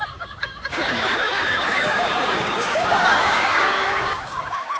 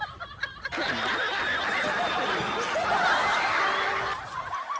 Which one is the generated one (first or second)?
first